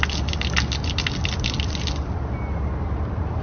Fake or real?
real